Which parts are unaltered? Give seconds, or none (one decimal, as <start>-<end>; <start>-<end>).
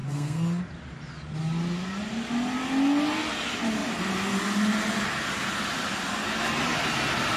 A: 0.6-7.4